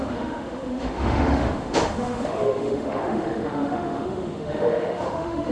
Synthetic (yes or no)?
yes